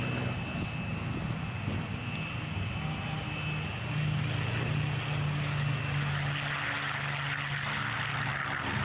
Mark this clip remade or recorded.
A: recorded